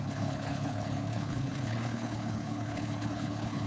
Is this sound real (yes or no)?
no